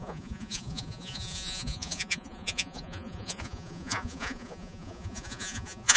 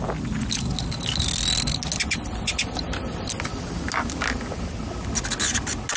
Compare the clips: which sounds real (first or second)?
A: second